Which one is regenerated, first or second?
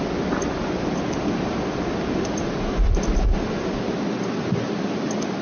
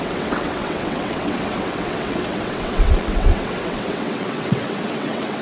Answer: second